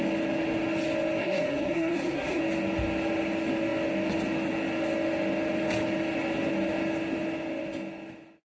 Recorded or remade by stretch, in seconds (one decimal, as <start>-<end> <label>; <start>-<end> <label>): 0.0-1.2 recorded; 1.2-2.4 remade; 2.4-8.5 recorded